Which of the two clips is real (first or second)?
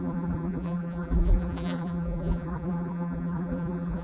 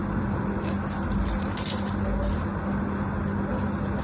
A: second